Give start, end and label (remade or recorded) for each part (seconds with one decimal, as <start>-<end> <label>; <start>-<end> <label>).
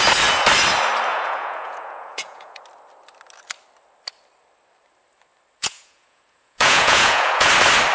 0.0-1.1 recorded; 1.1-2.6 remade; 2.6-5.6 recorded; 5.6-7.5 remade; 7.5-7.9 recorded